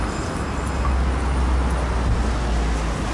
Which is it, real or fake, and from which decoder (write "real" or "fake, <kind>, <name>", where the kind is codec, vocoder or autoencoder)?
real